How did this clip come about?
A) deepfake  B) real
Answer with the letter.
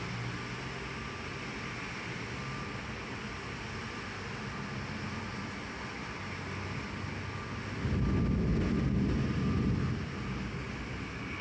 B